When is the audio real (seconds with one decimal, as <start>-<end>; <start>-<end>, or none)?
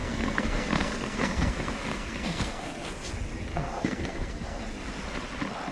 3.1-3.5; 4.6-5.7